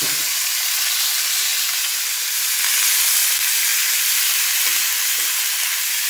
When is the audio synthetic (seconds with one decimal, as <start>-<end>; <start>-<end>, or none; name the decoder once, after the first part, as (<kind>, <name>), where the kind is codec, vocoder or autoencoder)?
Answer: 1.5-2.5 (vocoder, BigVGAN v2)